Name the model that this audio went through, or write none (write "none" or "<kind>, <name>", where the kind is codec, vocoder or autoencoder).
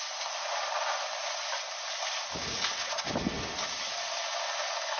none